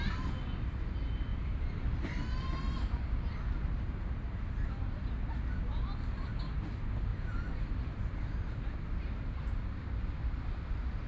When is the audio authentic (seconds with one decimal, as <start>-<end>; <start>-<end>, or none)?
0.0-1.3; 3.9-7.1; 10.6-11.1